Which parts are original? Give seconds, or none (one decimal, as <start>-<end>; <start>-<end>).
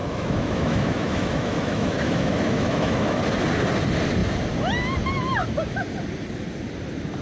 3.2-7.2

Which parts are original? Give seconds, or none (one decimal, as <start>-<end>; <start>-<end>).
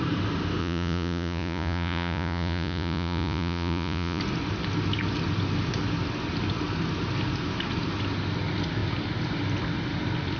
0.0-0.6; 4.2-10.4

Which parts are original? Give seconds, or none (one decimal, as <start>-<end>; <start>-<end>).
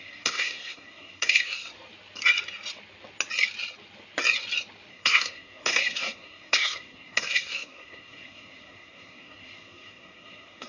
1.7-4.9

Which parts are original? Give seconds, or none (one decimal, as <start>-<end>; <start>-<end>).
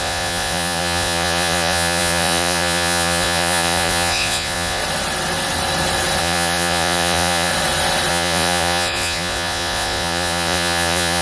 4.8-6.2; 7.5-8.1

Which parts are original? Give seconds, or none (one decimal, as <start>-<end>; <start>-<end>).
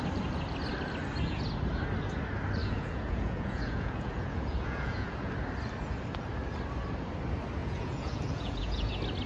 0.0-2.6; 5.3-7.6; 8.9-9.3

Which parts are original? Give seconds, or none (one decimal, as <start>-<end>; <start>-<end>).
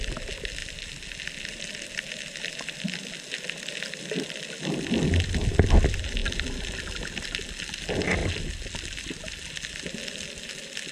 0.0-10.9